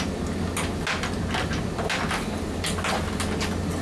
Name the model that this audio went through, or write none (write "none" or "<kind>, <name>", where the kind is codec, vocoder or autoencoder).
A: none